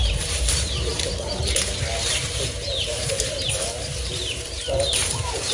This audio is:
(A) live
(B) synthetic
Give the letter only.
B